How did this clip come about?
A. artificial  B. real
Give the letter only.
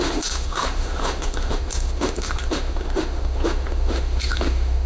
A